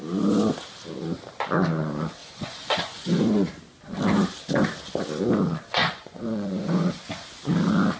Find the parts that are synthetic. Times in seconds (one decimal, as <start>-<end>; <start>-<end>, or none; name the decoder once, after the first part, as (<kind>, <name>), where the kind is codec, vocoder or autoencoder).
2.2-3.2 (vocoder, Vocos); 5.8-6.9